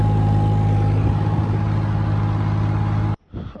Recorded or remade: recorded